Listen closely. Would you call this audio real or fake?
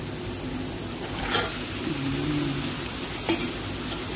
real